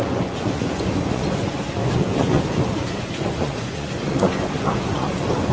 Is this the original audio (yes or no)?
no